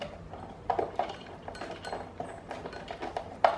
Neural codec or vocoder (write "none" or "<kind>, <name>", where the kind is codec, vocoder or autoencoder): none